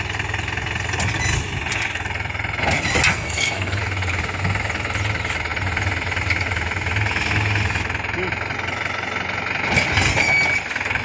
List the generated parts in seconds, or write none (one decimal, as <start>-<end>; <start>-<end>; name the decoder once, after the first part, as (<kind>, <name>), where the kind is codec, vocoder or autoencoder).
3.1-3.8 (codec, SNAC)